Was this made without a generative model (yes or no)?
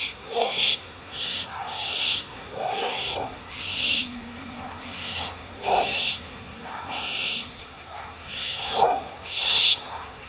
no